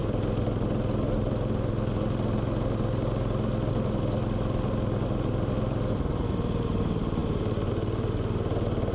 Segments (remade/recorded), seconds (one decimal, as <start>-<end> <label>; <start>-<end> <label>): 0.0-8.9 recorded